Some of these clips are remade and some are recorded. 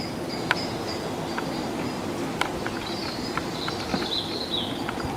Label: remade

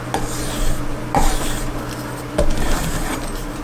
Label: recorded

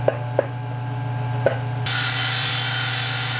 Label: remade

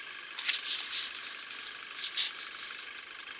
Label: recorded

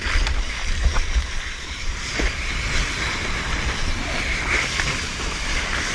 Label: remade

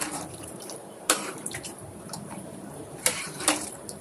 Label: remade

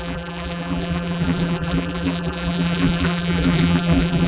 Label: remade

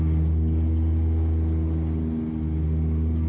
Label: recorded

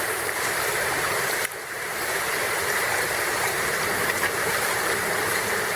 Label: remade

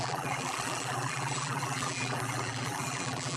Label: remade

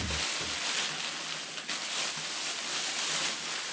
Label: recorded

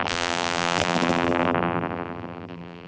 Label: remade